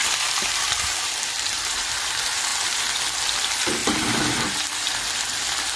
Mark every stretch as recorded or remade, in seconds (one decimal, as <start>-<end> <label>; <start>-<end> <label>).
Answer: 0.0-2.1 remade; 2.1-3.8 recorded; 3.8-4.4 remade; 4.4-5.8 recorded